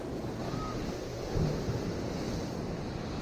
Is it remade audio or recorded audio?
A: recorded